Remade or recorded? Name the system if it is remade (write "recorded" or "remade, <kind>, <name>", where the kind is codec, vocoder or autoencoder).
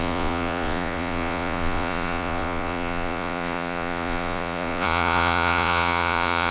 remade, vocoder, Vocos